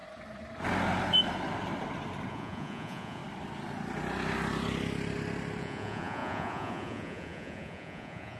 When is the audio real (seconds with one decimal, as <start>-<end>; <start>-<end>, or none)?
0.0-2.3; 3.2-5.6